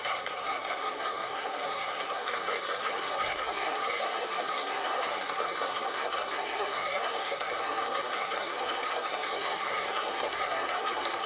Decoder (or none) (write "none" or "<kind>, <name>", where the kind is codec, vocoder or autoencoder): codec, SNAC